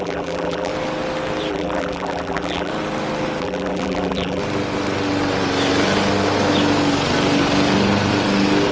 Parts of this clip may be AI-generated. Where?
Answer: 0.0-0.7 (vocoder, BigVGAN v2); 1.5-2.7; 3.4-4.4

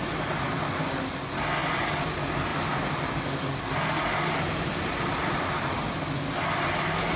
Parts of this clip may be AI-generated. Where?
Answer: none

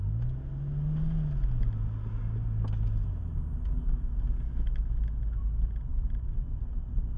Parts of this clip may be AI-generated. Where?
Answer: 5.9-6.4 (vocoder, BigVGAN v2)